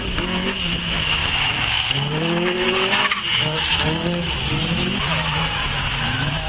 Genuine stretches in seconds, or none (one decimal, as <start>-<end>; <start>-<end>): none